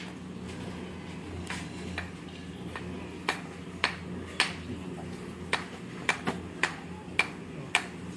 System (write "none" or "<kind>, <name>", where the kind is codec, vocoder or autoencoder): none